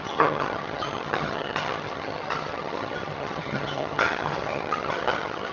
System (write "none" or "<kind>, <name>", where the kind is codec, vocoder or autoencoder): vocoder, HiFi-GAN